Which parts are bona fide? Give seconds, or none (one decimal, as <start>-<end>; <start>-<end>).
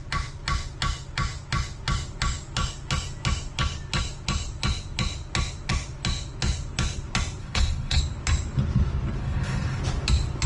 0.0-7.4; 8.0-9.2; 9.8-10.5